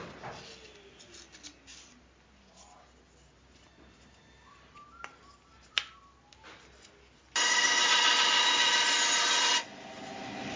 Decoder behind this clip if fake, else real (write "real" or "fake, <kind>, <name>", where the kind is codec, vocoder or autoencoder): real